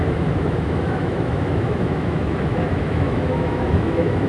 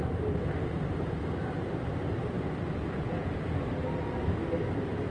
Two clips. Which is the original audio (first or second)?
second